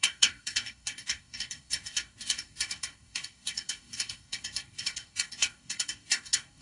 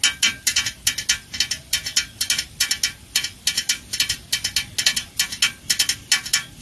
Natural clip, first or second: second